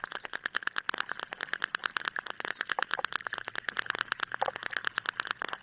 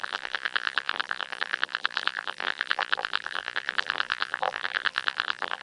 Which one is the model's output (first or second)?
second